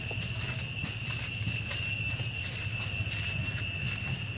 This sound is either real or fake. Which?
real